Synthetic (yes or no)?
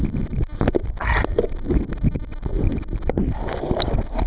no